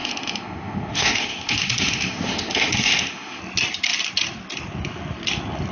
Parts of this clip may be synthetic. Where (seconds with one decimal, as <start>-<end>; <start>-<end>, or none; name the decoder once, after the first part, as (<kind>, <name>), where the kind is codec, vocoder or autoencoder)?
0.0-3.4 (autoencoder, DAC-VAE)